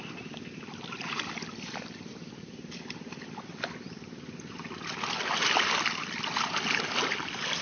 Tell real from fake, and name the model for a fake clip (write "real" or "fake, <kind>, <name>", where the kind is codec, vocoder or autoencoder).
real